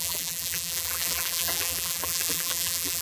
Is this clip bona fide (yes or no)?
no